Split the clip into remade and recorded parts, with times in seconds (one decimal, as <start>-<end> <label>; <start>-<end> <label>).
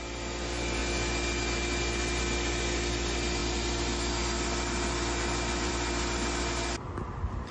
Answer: 0.0-7.5 recorded